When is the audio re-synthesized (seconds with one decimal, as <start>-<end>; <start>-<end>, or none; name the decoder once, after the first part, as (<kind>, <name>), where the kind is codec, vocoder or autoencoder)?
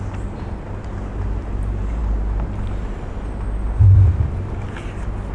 none